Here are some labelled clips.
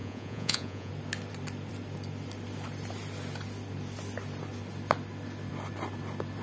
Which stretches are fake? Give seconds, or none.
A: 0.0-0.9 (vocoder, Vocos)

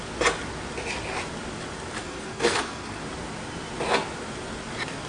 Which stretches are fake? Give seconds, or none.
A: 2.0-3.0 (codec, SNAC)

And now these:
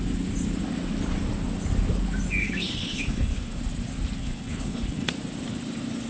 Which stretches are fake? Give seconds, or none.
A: 2.4-3.6 (codec, HILCodec); 4.2-5.1

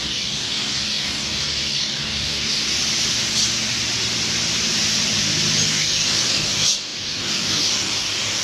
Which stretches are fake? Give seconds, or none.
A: 0.0-2.6 (codec, DAC); 5.7-8.4

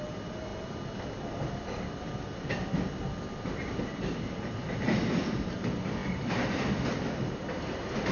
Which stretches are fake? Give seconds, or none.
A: none

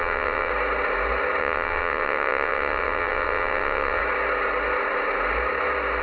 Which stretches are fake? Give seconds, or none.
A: 0.0-0.5 (vocoder, WaveNeXt); 1.4-4.0